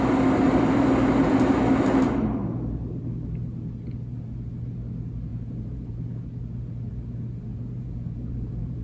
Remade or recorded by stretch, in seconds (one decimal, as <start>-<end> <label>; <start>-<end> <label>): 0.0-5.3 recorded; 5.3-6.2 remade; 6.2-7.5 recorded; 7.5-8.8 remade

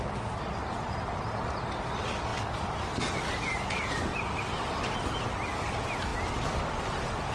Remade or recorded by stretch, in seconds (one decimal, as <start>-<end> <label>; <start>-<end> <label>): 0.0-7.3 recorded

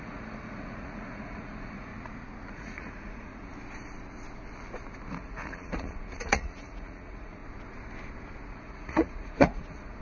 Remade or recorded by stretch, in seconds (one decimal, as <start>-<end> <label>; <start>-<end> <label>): 0.0-1.9 remade; 1.9-2.5 recorded; 2.5-3.5 remade; 3.5-5.1 recorded; 5.1-7.4 remade; 7.4-8.5 recorded; 8.5-10.0 remade

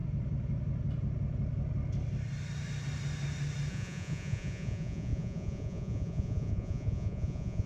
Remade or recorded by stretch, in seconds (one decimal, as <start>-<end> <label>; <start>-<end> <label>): 0.0-3.7 recorded; 3.7-7.7 remade